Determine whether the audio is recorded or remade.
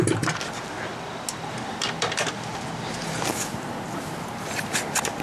recorded